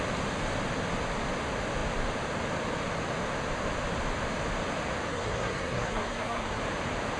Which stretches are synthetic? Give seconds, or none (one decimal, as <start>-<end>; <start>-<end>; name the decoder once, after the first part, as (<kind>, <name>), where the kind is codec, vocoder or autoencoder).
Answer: 5.1-6.6 (codec, SNAC)